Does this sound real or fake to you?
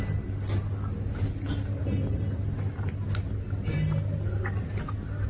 real